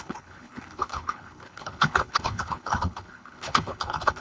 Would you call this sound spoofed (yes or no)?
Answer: yes